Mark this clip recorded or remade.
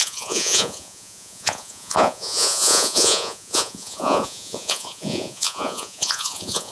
remade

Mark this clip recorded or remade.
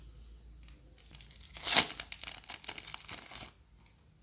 recorded